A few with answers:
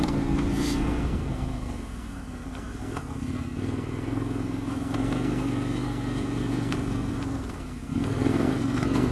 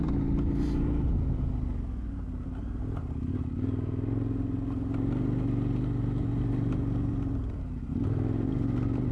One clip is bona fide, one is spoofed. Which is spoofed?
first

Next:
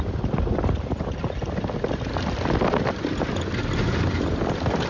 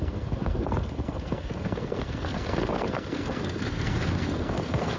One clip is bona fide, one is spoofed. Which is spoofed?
second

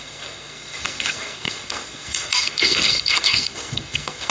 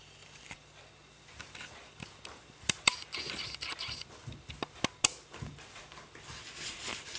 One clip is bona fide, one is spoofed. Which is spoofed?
first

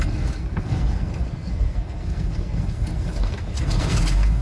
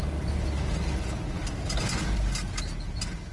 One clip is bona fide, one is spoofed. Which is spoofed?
first